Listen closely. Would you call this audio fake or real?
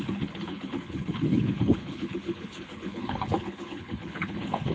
fake